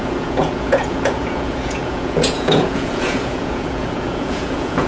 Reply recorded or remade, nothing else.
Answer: remade